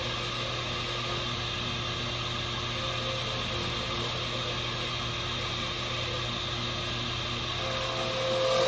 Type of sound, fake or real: real